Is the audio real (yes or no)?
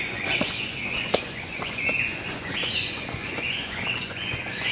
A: no